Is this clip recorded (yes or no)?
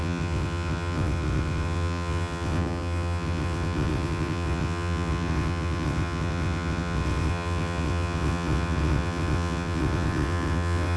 no